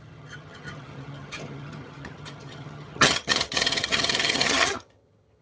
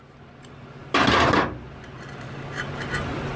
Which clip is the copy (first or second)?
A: first